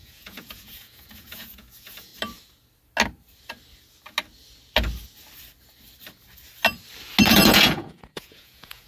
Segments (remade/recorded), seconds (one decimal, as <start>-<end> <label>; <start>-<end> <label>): 0.0-2.1 remade; 2.1-7.2 recorded; 7.2-8.9 remade

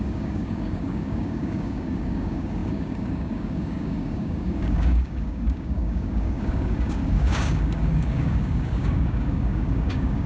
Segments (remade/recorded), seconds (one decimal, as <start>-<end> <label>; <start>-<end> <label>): 0.0-10.3 remade

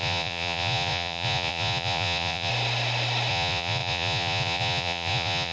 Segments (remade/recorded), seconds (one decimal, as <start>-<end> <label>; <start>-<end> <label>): 0.0-2.5 remade; 2.5-3.3 recorded; 3.3-5.5 remade

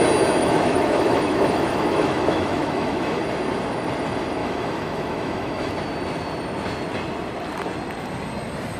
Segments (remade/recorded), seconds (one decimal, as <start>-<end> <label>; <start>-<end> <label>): 0.0-0.4 recorded; 0.4-3.2 remade; 3.2-4.4 recorded; 4.4-5.7 remade; 5.7-8.8 recorded

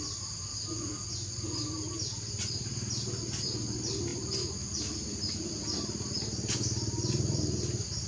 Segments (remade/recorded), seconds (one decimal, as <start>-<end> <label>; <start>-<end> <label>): 0.0-8.1 recorded